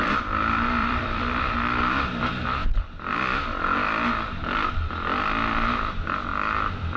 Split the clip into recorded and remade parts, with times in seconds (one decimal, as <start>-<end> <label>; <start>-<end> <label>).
0.0-0.8 recorded; 0.8-1.8 remade; 1.8-6.3 recorded; 6.3-7.0 remade